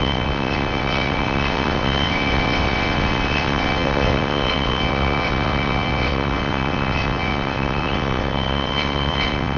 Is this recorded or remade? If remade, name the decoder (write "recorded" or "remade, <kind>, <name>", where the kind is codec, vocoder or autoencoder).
remade, vocoder, WaveNeXt